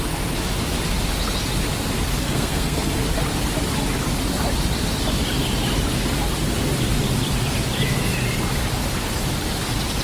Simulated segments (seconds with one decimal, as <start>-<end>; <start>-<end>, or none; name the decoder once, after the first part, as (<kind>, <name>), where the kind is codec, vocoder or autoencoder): 2.2-3.0 (codec, SNAC)